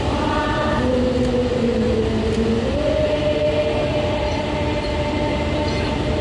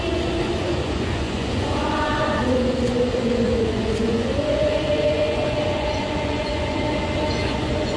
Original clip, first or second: first